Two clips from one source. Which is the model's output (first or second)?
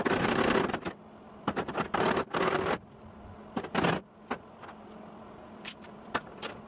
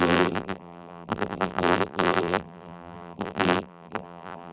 second